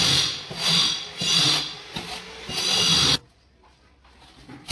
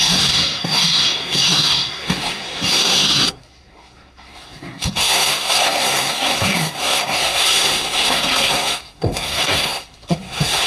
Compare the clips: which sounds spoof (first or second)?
second